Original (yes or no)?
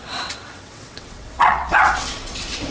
no